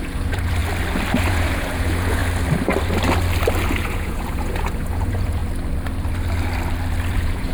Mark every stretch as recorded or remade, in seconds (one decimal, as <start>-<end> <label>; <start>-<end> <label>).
0.0-0.6 remade; 0.6-1.2 recorded; 1.2-2.2 remade; 2.2-3.7 recorded; 3.7-5.4 remade; 5.4-7.1 recorded; 7.1-7.5 remade